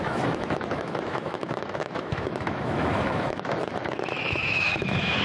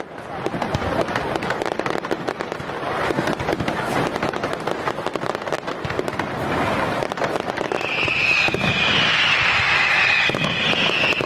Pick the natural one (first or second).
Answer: second